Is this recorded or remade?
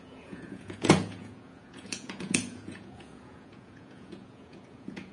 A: remade